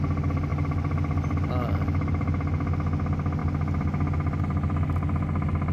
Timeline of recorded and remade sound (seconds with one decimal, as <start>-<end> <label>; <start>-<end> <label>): 0.0-5.7 recorded

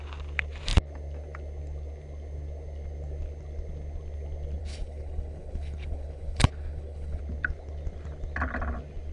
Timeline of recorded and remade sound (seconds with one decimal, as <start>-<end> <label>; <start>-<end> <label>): 0.0-4.6 recorded; 4.6-7.2 remade; 7.2-9.1 recorded

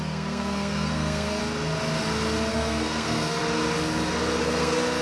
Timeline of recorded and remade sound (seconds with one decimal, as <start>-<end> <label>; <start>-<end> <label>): 0.0-1.4 remade; 1.4-2.5 recorded; 2.5-3.4 remade; 3.4-4.4 recorded; 4.4-5.0 remade

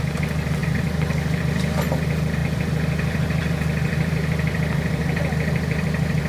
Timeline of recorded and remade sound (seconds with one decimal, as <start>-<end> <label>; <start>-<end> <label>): 0.0-0.6 recorded; 0.6-1.4 remade; 1.4-2.4 recorded; 2.4-6.3 remade